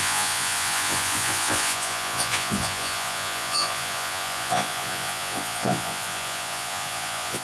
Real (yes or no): no